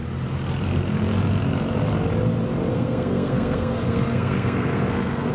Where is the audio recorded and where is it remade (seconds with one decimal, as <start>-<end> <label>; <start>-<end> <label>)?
0.0-2.7 recorded; 2.7-5.3 remade